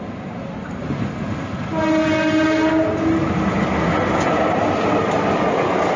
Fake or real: real